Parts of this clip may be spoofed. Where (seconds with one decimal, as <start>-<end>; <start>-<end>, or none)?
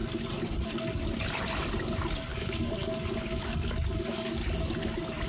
2.3-4.3